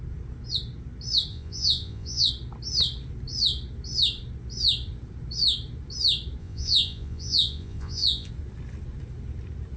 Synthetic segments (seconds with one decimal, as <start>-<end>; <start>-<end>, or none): 1.3-2.3; 6.4-8.3